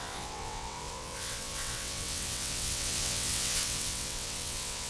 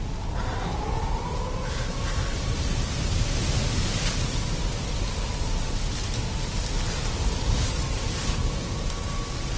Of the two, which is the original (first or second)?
second